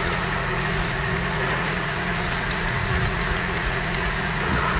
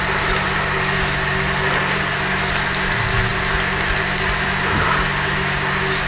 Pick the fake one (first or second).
first